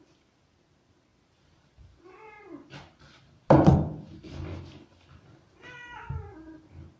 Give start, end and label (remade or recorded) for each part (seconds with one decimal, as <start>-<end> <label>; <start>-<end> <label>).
0.0-7.0 recorded